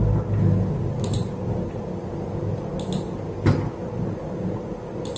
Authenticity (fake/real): real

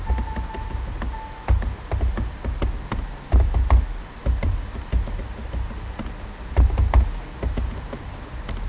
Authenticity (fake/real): real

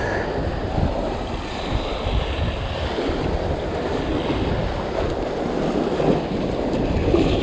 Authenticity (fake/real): real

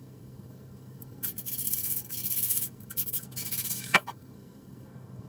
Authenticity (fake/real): fake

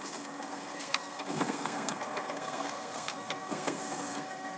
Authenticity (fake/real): fake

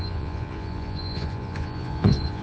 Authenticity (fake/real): fake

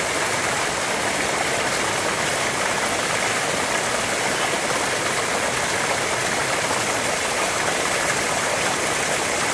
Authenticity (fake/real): real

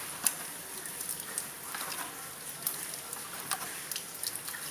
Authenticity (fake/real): real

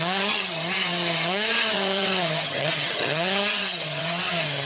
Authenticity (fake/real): fake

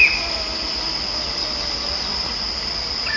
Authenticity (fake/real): real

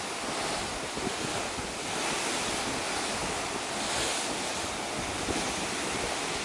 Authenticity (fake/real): real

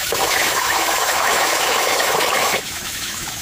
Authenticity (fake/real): fake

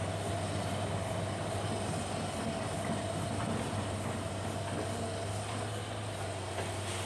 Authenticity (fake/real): real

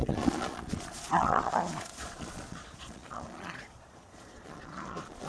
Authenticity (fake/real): fake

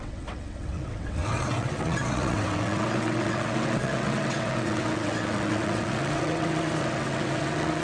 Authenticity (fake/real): fake